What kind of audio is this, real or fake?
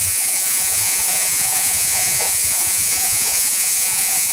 fake